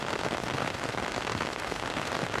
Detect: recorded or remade remade